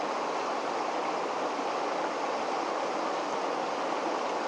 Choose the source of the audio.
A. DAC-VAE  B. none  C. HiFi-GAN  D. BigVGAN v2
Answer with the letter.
B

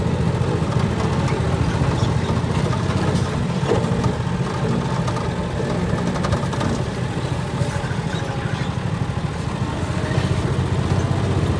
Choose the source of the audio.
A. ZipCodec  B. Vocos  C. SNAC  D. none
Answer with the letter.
D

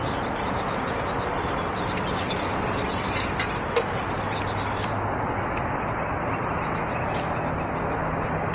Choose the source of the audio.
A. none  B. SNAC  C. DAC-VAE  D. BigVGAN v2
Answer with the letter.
A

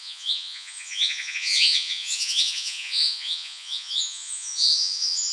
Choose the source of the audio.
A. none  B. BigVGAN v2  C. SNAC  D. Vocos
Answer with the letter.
D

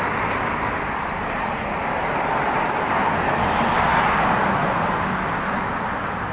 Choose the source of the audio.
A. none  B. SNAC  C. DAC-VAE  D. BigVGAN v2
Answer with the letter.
A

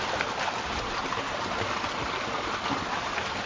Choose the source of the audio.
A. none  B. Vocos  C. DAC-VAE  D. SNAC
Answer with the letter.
A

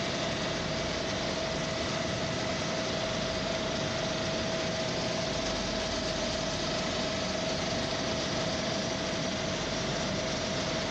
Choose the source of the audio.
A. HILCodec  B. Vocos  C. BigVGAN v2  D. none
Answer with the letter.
D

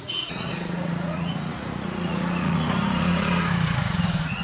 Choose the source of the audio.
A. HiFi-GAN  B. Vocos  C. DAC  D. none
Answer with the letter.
B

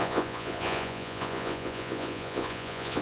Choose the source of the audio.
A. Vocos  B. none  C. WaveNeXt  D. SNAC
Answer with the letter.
A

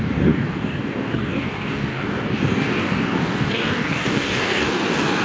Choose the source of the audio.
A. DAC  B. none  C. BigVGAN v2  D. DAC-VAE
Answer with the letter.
A